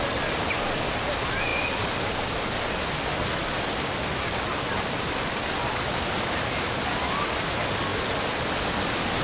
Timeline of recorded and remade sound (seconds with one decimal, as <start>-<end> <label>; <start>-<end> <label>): 0.0-9.2 recorded